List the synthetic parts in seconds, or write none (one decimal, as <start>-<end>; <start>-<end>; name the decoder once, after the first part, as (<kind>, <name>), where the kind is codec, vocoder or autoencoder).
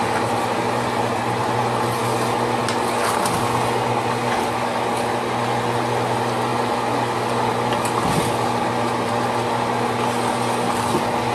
none